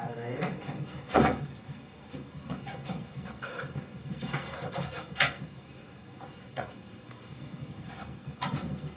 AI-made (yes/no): yes